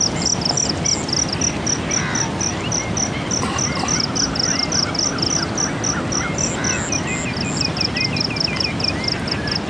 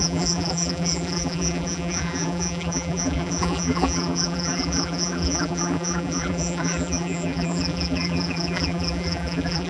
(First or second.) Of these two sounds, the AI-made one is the second